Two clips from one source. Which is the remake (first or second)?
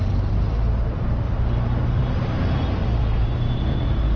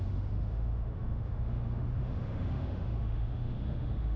second